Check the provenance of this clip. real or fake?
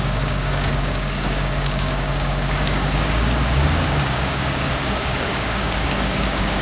fake